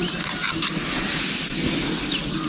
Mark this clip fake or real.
real